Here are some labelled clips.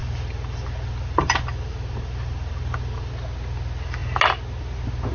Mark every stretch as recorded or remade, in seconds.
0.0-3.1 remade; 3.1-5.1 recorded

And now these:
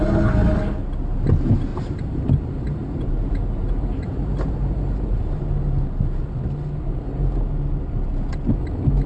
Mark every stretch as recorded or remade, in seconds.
0.0-1.7 recorded; 1.7-5.4 remade; 5.4-9.1 recorded

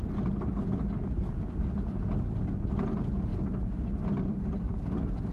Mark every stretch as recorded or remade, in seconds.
0.0-3.3 recorded; 3.3-3.8 remade; 3.8-5.3 recorded

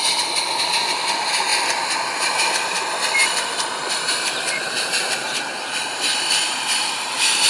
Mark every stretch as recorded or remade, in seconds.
0.0-1.5 remade; 1.5-2.5 recorded; 2.5-7.5 remade

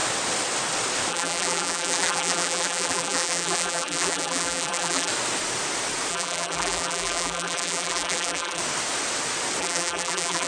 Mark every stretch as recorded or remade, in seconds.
0.0-1.1 recorded; 1.1-5.1 remade; 5.1-6.1 recorded; 6.1-8.6 remade; 8.6-9.6 recorded; 9.6-10.5 remade

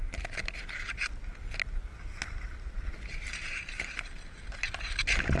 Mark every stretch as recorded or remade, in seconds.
0.0-2.9 recorded; 2.9-4.1 remade; 4.1-5.4 recorded